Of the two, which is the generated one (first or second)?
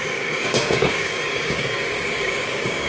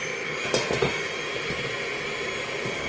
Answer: first